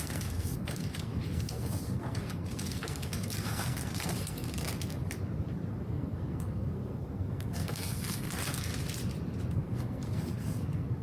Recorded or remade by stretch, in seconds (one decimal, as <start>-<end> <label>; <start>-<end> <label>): 0.0-5.0 remade; 5.0-5.7 recorded; 5.7-8.7 remade; 8.7-9.5 recorded; 9.5-11.0 remade